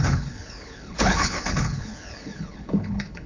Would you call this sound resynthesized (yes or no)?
yes